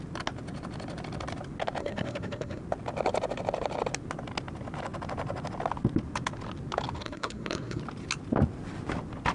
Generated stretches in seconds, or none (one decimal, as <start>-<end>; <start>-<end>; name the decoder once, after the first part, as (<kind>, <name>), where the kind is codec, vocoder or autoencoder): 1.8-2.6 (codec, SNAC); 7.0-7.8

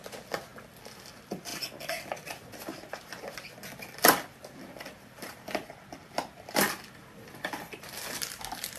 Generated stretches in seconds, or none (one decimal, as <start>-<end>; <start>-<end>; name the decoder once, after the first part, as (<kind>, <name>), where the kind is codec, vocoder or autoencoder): none

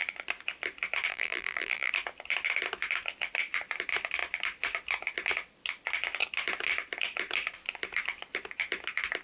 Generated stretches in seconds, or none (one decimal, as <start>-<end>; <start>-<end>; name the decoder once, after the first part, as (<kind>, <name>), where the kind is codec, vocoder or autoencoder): 1.1-1.9 (vocoder, BigVGAN v2)

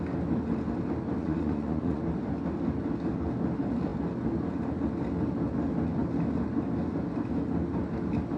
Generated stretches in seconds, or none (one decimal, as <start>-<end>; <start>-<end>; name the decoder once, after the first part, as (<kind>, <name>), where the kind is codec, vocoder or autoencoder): 1.2-2.0 (vocoder, Vocos)